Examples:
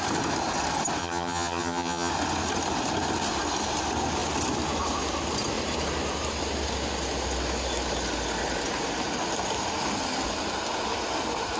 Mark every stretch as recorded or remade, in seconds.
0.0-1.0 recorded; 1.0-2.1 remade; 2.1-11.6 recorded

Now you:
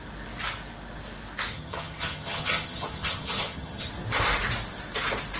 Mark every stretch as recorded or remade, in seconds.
0.0-1.5 recorded; 1.5-3.9 remade; 3.9-5.4 recorded